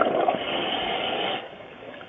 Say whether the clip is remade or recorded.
remade